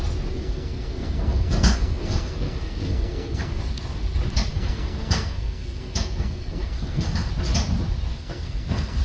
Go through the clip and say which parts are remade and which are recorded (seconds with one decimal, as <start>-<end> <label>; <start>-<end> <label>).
0.0-0.4 recorded; 0.4-3.6 remade; 3.6-4.5 recorded; 4.5-7.3 remade; 7.3-8.1 recorded; 8.1-9.0 remade